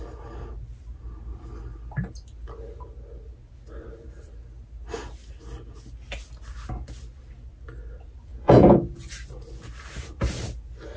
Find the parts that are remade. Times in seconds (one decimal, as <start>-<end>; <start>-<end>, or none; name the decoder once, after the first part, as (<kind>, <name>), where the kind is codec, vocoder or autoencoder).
8.3-8.9 (vocoder, Vocos)